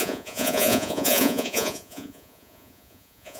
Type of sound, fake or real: fake